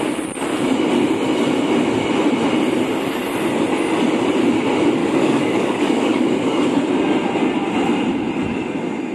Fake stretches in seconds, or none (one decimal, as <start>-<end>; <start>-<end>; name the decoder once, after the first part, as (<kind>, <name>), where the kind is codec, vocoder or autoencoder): 5.0-6.6 (codec, DAC)